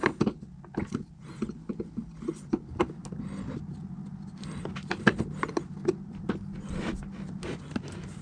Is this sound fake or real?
real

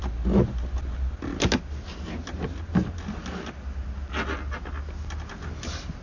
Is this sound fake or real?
real